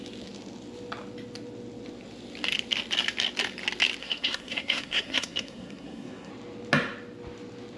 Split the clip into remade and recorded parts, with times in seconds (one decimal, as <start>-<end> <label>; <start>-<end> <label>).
0.0-4.0 recorded; 4.0-6.3 remade; 6.3-7.8 recorded